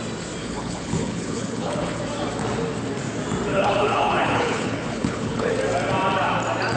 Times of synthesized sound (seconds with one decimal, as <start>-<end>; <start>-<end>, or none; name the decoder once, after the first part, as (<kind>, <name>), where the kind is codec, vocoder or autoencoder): 0.4-2.0 (codec, HILCodec); 3.5-5.5